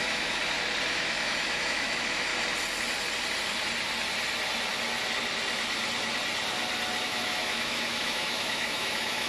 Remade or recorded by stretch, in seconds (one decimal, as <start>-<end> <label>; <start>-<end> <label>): 0.0-0.4 remade; 0.4-0.9 recorded; 0.9-2.3 remade; 2.3-7.0 recorded; 7.0-9.3 remade